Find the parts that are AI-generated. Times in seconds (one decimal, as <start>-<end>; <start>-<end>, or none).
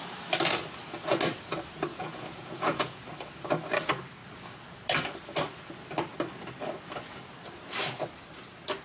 1.9-3.0